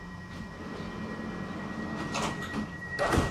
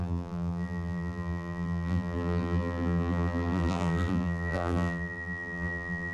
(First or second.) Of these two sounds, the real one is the first